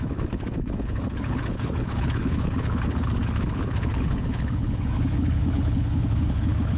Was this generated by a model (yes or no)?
yes